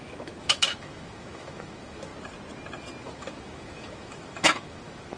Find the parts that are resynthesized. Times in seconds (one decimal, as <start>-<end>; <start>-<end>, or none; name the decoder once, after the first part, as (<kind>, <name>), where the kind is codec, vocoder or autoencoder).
0.0-2.1 (autoencoder, DAC-VAE); 3.0-5.2